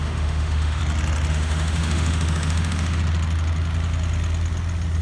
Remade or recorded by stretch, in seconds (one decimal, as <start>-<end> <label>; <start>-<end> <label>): 0.0-0.8 remade; 0.8-1.3 recorded; 1.3-3.0 remade; 3.0-5.0 recorded